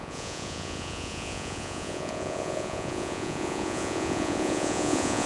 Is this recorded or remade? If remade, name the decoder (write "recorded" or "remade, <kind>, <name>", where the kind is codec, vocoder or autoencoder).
remade, vocoder, Vocos